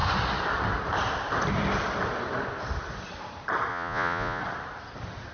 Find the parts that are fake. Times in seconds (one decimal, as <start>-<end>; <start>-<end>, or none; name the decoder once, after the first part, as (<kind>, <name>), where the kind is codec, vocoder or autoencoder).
3.7-4.4 (vocoder, Vocos)